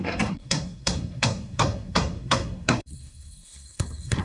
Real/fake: fake